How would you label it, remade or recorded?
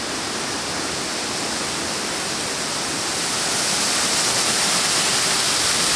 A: recorded